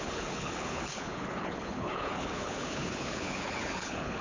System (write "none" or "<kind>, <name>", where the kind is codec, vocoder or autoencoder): codec, HILCodec